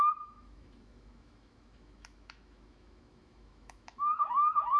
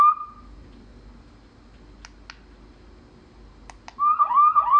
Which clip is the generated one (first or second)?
first